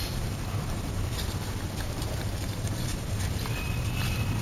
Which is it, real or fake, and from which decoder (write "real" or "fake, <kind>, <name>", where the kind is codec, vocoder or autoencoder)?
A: fake, vocoder, BigVGAN v2